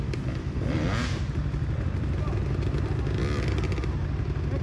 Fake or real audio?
real